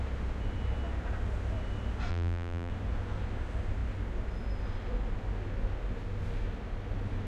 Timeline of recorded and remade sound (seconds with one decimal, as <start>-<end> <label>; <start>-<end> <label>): 0.0-2.1 recorded; 2.1-2.7 remade; 2.7-7.3 recorded